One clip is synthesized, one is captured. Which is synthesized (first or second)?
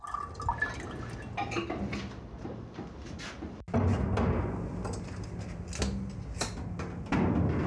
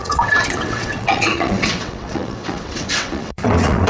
second